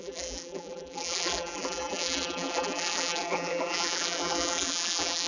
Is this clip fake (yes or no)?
yes